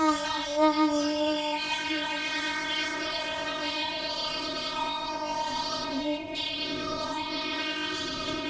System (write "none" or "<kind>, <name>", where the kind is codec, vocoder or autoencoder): codec, ZipCodec